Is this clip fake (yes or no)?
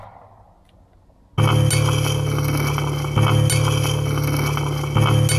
no